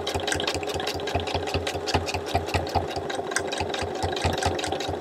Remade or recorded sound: recorded